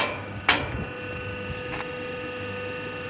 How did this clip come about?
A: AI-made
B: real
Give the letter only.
B